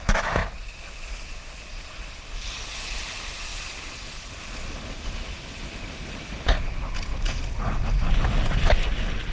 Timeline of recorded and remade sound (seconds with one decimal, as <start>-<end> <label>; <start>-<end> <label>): 0.0-3.5 recorded; 3.5-6.6 remade; 6.6-7.1 recorded; 7.1-7.9 remade; 7.9-9.3 recorded